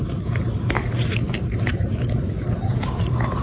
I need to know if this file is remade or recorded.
remade